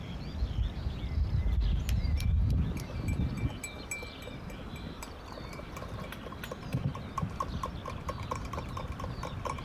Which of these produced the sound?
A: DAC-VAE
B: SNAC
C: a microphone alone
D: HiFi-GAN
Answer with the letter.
C